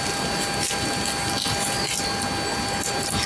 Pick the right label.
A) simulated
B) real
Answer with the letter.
B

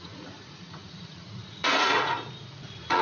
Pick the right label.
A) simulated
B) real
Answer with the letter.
A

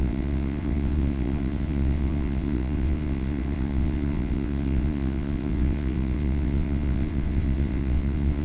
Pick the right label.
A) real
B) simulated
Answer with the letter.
B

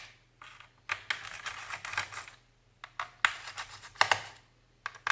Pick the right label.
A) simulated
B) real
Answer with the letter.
B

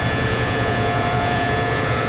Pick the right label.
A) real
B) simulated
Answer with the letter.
B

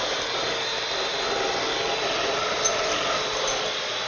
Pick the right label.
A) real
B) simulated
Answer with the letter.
A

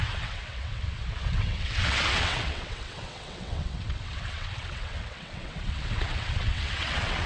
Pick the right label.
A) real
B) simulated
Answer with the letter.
B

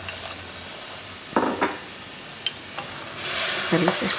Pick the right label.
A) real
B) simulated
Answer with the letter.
A